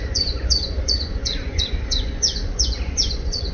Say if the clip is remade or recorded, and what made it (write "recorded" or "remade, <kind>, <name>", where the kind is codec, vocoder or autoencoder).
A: remade, vocoder, Vocos